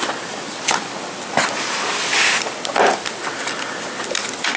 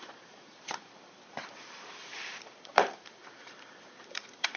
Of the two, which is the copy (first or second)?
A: second